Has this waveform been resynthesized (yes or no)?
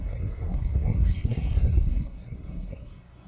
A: yes